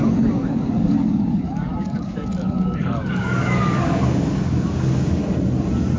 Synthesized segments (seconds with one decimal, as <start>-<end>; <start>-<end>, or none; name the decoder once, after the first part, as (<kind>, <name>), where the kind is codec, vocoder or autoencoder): 0.0-5.2 (codec, DAC)